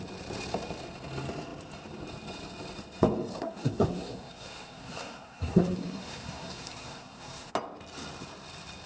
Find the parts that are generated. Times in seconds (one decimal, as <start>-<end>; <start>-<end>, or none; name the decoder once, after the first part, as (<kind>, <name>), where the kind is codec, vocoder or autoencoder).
3.3-7.5 (codec, SNAC)